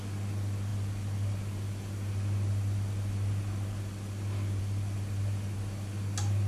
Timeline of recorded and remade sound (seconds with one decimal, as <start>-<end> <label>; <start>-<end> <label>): 0.0-6.5 recorded